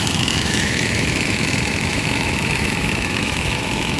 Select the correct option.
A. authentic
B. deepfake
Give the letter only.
B